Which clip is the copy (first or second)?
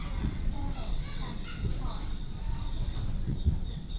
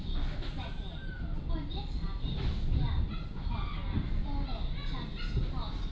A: first